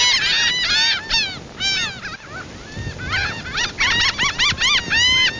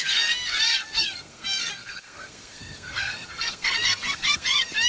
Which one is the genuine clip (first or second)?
first